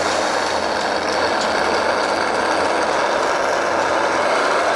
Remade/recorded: recorded